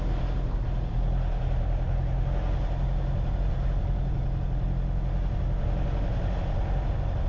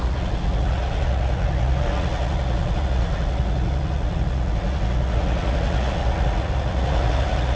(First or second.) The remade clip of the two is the second